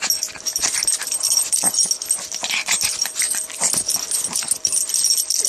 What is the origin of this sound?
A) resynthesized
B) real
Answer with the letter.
B